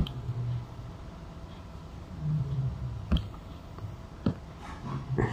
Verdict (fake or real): real